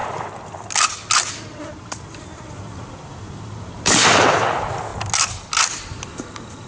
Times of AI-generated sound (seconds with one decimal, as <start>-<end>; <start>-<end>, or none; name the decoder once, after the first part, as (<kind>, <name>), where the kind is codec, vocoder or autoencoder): none